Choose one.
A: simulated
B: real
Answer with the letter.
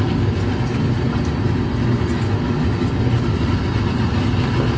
B